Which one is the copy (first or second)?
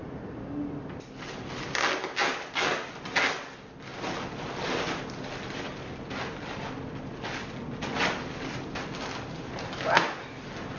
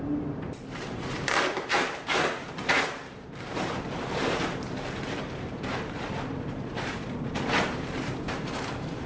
second